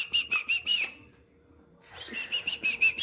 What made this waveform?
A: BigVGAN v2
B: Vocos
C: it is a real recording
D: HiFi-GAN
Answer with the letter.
A